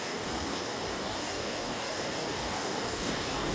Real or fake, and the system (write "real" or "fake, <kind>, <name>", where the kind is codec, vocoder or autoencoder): fake, codec, DAC